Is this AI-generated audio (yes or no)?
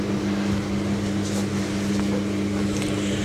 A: no